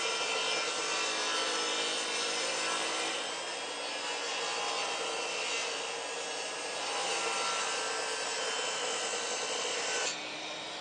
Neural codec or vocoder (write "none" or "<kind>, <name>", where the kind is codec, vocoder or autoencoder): none